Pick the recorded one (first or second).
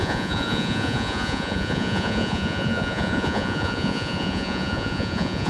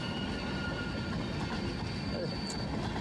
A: second